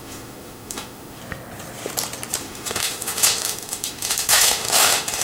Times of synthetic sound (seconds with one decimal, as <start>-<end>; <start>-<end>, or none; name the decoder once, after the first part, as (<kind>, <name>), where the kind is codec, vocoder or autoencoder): 0.0-1.2 (autoencoder, DAC-VAE); 2.4-5.2